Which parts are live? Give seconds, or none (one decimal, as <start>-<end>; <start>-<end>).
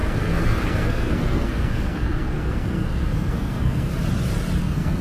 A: 3.9-4.6